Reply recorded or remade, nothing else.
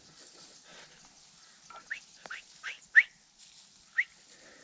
recorded